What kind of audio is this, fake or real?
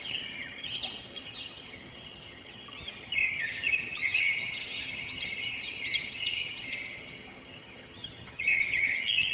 fake